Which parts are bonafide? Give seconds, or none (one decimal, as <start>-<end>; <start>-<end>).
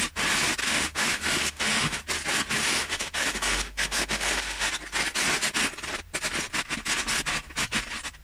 0.0-0.6; 2.0-2.6; 4.7-8.2